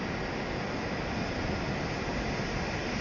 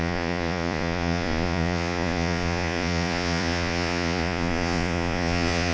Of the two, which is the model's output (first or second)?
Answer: second